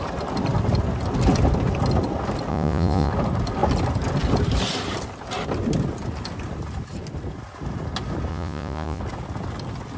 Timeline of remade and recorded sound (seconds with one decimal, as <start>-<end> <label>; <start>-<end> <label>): 0.0-2.5 recorded; 2.5-3.1 remade; 3.1-8.3 recorded; 8.3-9.0 remade; 9.0-10.0 recorded